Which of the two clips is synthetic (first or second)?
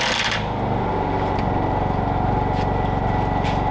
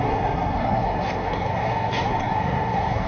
second